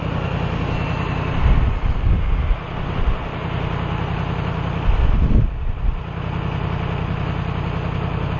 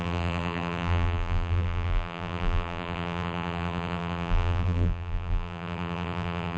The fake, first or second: second